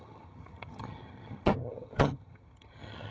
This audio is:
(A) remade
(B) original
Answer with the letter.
A